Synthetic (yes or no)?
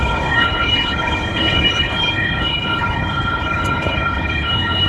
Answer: yes